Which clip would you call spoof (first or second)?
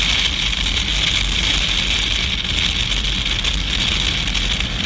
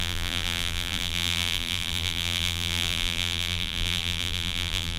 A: second